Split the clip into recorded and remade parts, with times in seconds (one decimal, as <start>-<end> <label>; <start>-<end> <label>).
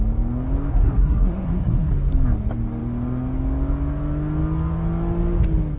0.0-0.7 recorded; 0.7-1.9 remade; 1.9-5.8 recorded